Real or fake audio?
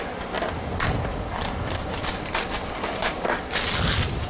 real